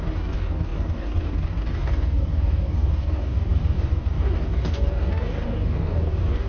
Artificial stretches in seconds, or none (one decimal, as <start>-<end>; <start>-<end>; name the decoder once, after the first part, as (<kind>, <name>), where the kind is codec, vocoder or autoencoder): 0.0-6.5 (codec, DAC)